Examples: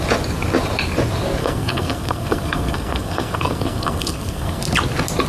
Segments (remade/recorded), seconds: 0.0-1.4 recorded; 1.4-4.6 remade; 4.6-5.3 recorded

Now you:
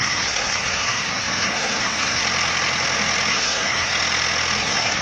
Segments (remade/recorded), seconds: 0.0-2.2 remade; 2.2-3.3 recorded; 3.3-3.9 remade; 3.9-4.6 recorded; 4.6-5.0 remade

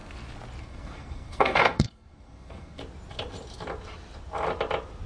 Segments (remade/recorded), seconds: 0.0-0.6 recorded; 0.6-2.8 remade; 2.8-5.1 recorded

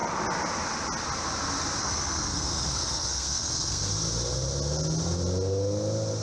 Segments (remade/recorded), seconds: 0.0-1.8 recorded; 1.8-3.9 remade; 3.9-6.2 recorded

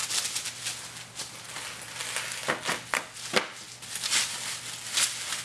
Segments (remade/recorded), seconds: 0.0-5.4 recorded

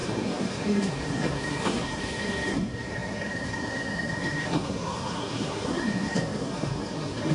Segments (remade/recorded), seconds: 0.0-7.3 remade